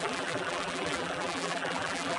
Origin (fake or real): fake